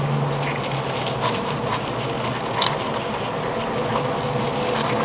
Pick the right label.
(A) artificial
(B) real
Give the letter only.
B